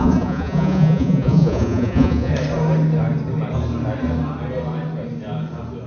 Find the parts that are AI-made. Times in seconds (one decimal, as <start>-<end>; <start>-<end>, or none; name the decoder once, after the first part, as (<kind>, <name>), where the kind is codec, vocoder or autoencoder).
0.0-2.3 (vocoder, Vocos)